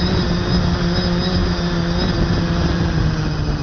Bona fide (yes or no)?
yes